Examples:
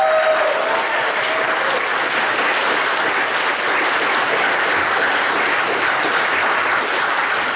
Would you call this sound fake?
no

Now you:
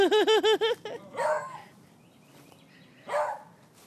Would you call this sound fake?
no